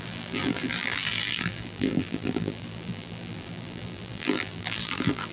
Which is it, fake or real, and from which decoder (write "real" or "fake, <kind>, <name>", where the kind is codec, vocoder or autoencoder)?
fake, vocoder, BigVGAN v2